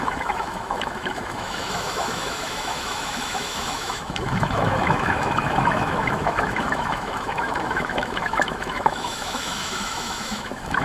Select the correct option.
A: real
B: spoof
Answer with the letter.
B